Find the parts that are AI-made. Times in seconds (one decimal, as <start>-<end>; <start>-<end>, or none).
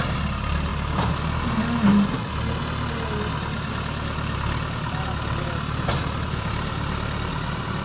none